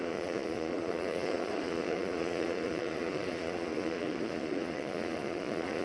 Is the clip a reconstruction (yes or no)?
yes